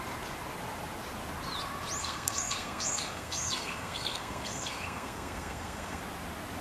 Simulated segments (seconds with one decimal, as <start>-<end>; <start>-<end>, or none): 2.0-6.0